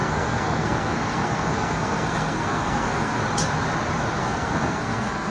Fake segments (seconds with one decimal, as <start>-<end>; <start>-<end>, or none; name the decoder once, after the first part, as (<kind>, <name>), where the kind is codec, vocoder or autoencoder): 0.0-3.2 (codec, SNAC); 4.2-5.3

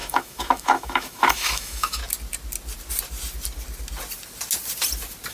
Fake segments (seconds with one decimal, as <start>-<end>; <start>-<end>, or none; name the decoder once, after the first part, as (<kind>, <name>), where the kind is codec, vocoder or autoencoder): 0.0-2.0 (autoencoder, DAC-VAE)

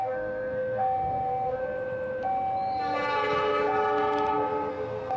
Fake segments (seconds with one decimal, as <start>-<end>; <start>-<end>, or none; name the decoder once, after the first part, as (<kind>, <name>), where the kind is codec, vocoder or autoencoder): 0.0-1.6 (codec, SNAC); 4.7-5.2

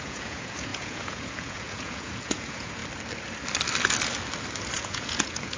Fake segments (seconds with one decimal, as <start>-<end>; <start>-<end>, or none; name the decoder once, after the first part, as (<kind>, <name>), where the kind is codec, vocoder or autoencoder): 0.0-2.8 (vocoder, Vocos); 4.7-5.6

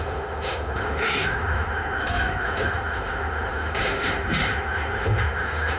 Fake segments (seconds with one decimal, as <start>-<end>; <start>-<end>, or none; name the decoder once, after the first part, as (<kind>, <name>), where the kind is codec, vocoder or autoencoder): 0.0-5.8 (autoencoder, DAC-VAE)

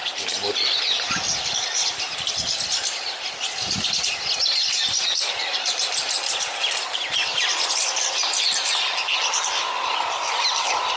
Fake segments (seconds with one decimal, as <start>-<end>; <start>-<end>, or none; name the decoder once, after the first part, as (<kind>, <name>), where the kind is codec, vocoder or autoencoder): none

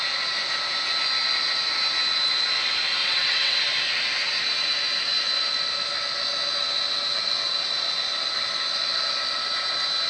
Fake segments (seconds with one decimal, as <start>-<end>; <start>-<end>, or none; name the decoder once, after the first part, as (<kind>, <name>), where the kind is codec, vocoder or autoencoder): 3.0-3.6 (vocoder, WaveNeXt)

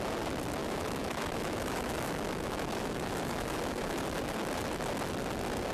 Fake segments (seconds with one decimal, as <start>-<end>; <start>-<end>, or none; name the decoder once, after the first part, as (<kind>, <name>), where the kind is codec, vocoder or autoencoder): 0.6-4.0 (autoencoder, DAC-VAE)